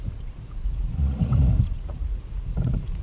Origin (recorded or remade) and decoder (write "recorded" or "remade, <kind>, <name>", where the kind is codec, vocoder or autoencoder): remade, vocoder, Vocos